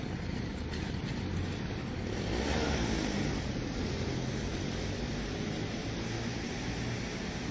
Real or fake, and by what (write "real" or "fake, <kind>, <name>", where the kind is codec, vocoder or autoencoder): real